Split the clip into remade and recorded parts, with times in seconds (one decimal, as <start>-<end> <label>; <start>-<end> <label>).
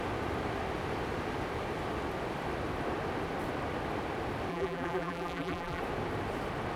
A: 0.0-4.5 recorded; 4.5-5.8 remade; 5.8-6.8 recorded